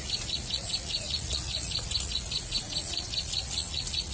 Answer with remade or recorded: remade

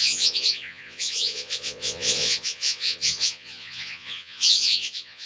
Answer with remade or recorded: remade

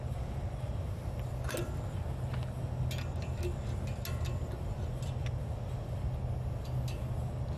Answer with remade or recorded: recorded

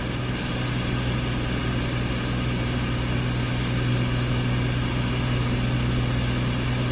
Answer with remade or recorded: recorded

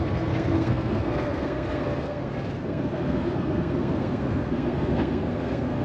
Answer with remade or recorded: remade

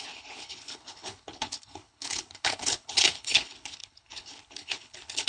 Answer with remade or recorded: remade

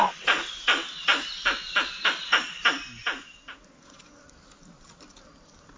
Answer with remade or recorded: recorded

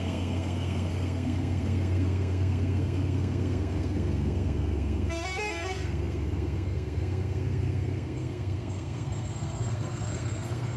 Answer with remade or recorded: remade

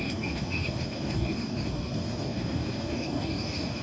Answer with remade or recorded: remade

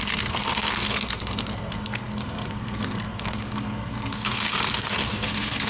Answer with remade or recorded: remade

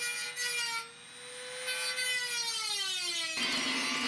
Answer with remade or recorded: recorded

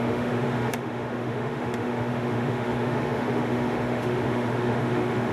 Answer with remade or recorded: remade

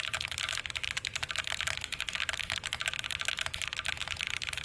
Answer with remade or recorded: recorded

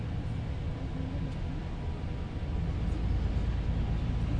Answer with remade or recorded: recorded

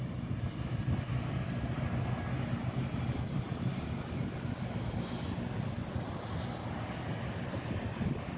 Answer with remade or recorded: recorded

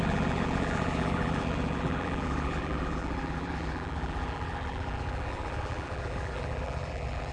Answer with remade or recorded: remade